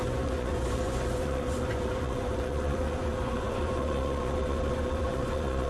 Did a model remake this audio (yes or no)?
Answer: yes